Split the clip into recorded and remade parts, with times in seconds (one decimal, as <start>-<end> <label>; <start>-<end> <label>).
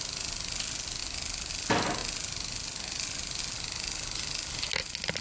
0.0-1.0 recorded; 1.0-1.5 remade; 1.5-5.2 recorded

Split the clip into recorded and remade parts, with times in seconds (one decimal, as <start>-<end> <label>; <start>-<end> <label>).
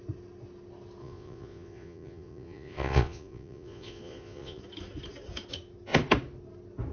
0.0-1.0 recorded; 1.0-4.6 remade; 4.6-6.9 recorded